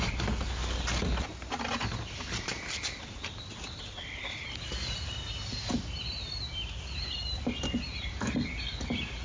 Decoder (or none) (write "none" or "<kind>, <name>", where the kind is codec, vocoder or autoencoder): none